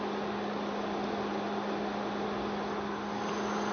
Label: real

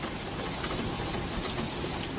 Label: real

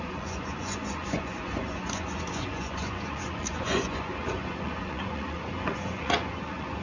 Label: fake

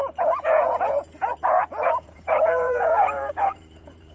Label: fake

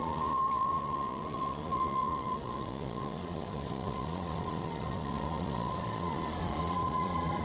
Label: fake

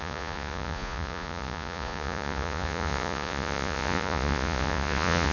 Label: fake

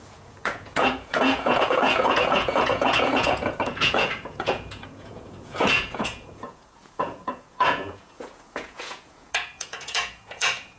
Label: fake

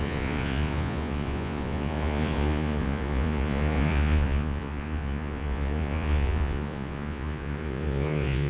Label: fake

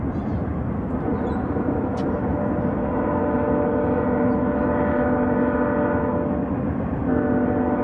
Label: real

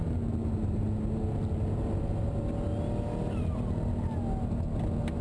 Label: real